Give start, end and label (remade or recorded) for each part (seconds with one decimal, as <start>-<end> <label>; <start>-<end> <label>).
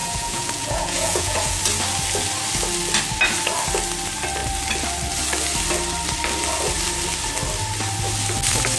0.0-1.6 remade; 1.6-8.8 recorded